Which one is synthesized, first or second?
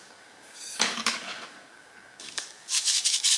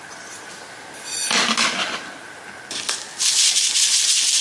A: first